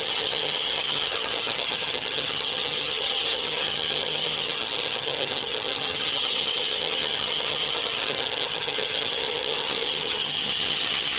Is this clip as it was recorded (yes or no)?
no